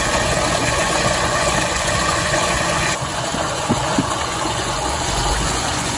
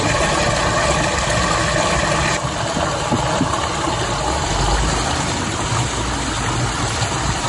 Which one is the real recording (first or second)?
second